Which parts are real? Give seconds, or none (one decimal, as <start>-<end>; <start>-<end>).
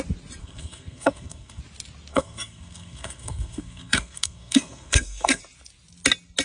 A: 0.0-0.4; 1.6-2.1; 5.4-6.4